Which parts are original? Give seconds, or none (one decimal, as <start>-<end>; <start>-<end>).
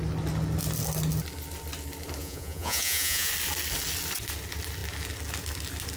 0.0-2.2; 3.3-6.0